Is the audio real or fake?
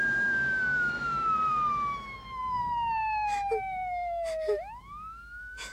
fake